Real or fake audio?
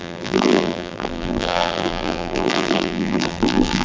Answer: fake